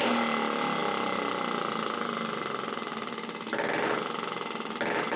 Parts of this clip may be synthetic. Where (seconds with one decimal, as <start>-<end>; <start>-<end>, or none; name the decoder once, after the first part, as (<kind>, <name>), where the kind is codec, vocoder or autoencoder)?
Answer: none